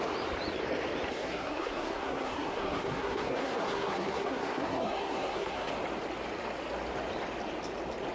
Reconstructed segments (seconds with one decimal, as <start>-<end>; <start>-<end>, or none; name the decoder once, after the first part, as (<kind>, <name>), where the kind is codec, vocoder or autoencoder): 1.1-5.7 (codec, SNAC)